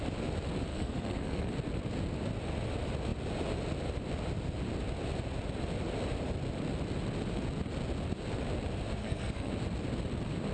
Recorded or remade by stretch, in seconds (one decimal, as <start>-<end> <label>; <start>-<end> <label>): 0.0-0.7 recorded; 0.7-1.5 remade; 1.5-9.0 recorded; 9.0-9.5 remade; 9.5-10.5 recorded